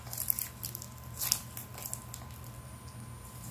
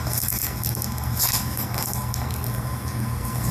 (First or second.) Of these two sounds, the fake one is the second